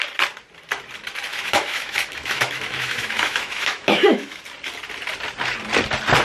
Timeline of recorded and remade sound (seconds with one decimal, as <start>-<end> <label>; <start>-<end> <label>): 0.0-1.3 recorded; 1.3-4.4 remade; 4.4-6.2 recorded